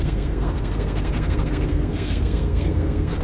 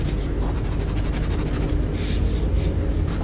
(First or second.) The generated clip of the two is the first